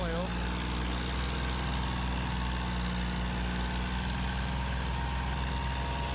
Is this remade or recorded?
recorded